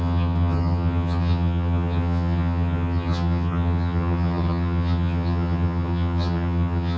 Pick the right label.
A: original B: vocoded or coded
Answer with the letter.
B